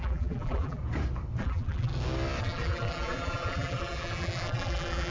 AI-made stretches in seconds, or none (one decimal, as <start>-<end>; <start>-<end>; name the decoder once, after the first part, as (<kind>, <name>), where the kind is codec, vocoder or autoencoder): 0.0-0.8 (vocoder, BigVGAN v2); 1.4-1.9; 2.4-5.1